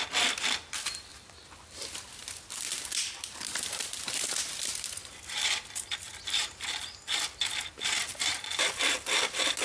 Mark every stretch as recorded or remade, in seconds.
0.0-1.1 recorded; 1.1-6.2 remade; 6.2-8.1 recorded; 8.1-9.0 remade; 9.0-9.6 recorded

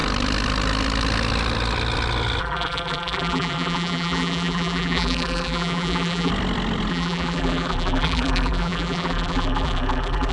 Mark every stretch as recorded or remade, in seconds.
0.0-2.4 recorded; 2.4-6.3 remade; 6.3-6.9 recorded; 6.9-10.3 remade

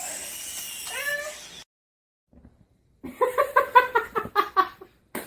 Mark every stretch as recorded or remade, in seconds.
0.0-1.9 recorded; 1.9-5.3 remade

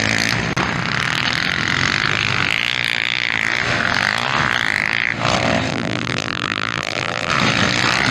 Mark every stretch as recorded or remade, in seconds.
0.0-5.7 recorded; 5.7-7.3 remade; 7.3-8.1 recorded

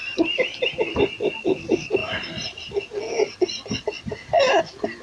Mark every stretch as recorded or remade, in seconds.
0.0-5.0 recorded

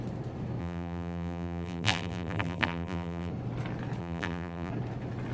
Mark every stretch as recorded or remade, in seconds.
0.0-0.6 recorded; 0.6-3.3 remade; 3.3-4.0 recorded; 4.0-4.7 remade; 4.7-5.3 recorded

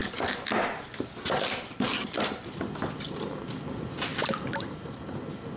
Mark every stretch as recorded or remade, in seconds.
0.0-2.9 remade; 2.9-5.6 recorded

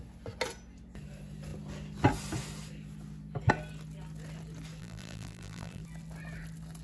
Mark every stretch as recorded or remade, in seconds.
0.0-4.8 recorded; 4.8-5.8 remade; 5.8-6.8 recorded